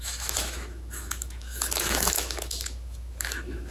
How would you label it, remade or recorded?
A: remade